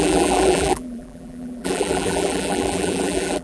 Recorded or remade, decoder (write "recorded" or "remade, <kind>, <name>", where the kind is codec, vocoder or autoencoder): remade, vocoder, BigVGAN v2